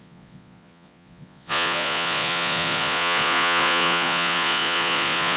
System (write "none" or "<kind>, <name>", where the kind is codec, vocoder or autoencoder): vocoder, Vocos